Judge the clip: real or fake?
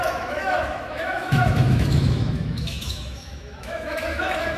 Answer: fake